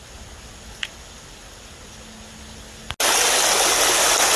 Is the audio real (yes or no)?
yes